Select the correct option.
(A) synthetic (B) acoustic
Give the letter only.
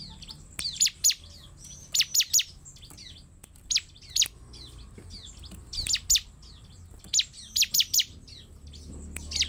B